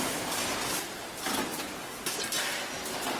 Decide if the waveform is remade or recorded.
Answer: remade